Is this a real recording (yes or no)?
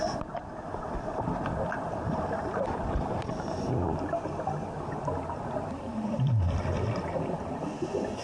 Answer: yes